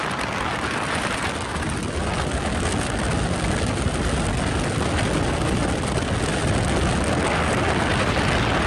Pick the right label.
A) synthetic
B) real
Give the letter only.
B